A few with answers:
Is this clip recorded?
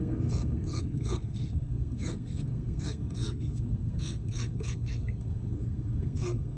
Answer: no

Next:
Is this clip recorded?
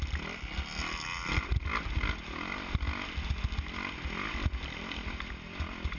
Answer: yes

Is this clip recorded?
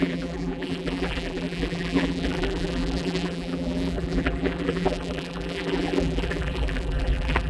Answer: no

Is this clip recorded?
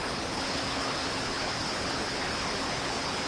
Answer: no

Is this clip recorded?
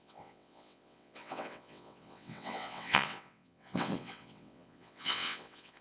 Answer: no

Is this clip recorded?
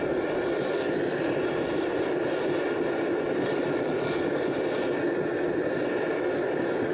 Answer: yes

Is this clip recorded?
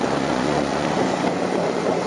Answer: no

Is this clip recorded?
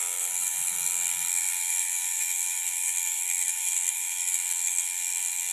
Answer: no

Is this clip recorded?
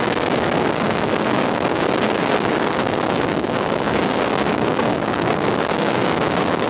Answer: no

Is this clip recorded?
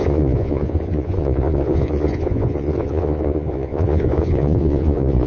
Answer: no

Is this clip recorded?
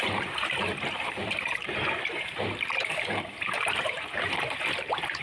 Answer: no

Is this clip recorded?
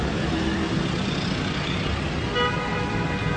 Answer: yes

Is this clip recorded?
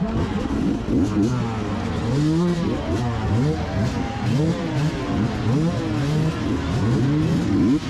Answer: yes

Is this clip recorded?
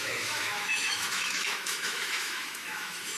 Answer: no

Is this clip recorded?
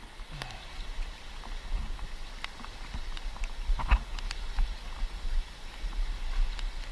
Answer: yes